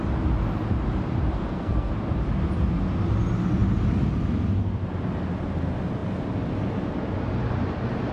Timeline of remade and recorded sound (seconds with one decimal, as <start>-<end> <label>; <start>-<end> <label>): 0.0-1.4 recorded; 1.4-1.9 remade; 1.9-8.1 recorded